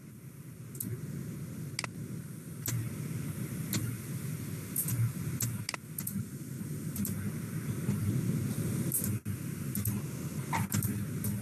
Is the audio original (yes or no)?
yes